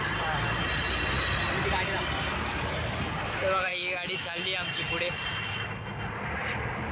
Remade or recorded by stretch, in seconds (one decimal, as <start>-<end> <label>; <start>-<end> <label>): 0.0-3.7 recorded; 3.7-4.4 remade; 4.4-6.9 recorded